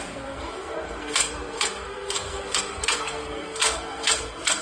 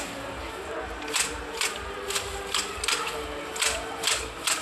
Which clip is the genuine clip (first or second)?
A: second